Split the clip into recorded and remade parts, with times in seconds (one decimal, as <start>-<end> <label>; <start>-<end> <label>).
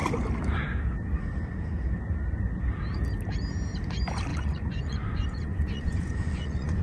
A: 0.0-4.3 recorded; 4.3-6.8 remade